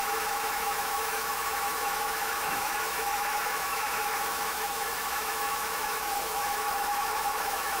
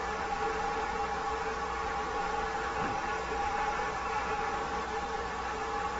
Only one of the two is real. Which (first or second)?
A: second